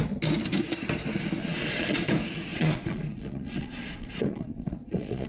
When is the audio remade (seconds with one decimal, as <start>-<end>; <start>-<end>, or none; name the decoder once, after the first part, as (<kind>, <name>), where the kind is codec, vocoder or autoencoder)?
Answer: 1.4-2.1 (vocoder, Vocos); 2.5-5.3